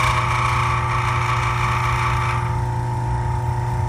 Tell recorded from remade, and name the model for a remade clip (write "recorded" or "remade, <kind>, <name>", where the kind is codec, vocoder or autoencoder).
recorded